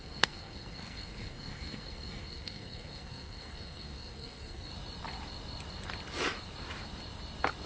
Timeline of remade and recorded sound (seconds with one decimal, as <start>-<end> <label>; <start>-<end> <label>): 0.0-4.7 remade; 4.7-7.7 recorded